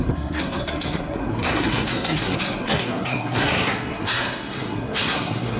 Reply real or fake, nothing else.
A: fake